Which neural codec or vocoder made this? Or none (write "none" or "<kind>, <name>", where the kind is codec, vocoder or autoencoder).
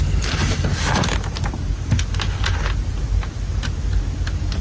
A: none